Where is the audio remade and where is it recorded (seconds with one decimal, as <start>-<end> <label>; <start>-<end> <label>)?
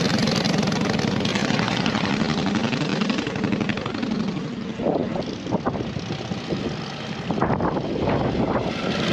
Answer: 0.0-1.3 recorded; 1.3-2.1 remade; 2.1-9.1 recorded